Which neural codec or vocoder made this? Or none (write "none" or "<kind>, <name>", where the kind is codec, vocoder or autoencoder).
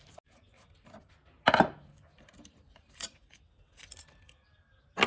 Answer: none